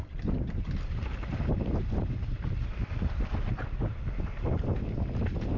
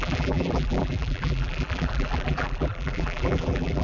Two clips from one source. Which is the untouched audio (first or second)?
first